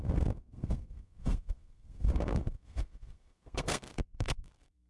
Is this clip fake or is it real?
fake